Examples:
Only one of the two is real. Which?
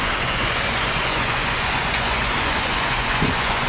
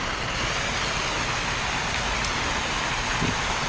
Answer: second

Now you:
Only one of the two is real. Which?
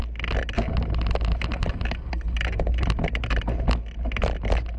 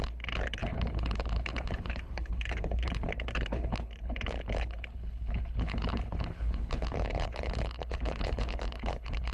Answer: first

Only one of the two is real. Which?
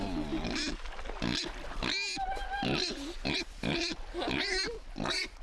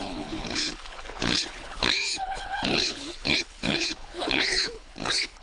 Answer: first